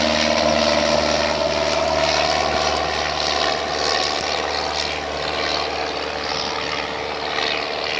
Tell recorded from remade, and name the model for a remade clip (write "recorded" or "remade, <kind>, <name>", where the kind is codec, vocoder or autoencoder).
recorded